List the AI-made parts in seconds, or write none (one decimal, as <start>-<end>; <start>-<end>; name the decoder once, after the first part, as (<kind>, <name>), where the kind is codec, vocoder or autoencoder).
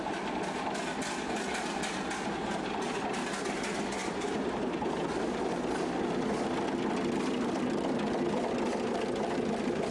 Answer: 4.0-4.6 (vocoder, BigVGAN v2)